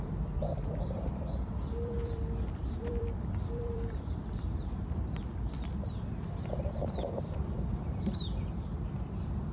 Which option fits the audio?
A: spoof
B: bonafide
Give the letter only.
A